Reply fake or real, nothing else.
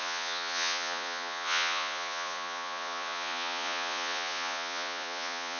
fake